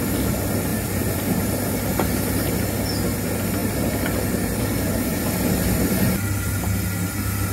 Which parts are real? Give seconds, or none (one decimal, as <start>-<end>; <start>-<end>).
0.0-0.7; 1.3-5.1; 5.8-7.5